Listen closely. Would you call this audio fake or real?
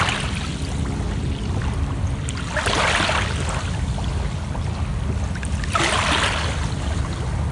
real